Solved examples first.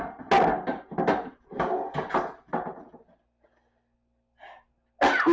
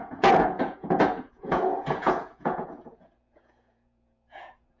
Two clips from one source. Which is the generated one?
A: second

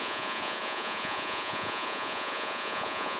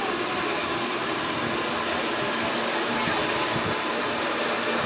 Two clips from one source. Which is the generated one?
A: first